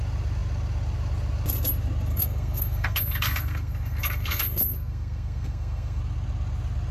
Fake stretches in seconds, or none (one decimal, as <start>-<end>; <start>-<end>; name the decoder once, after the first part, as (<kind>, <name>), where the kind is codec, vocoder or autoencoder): 2.1-6.0 (codec, SNAC)